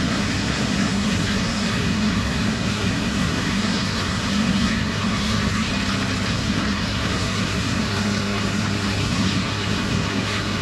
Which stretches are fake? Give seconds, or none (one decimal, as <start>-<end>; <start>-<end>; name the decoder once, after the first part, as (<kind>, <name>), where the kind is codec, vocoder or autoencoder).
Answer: 0.0-5.7 (codec, SNAC); 6.3-10.6